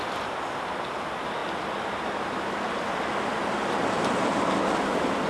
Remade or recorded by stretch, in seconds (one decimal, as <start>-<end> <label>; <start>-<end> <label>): 0.0-5.3 recorded